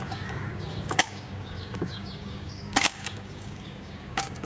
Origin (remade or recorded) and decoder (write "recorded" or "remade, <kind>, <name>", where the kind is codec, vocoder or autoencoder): remade, codec, DAC